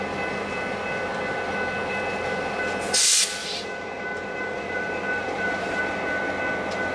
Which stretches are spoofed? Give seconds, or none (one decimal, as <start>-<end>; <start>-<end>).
3.4-5.8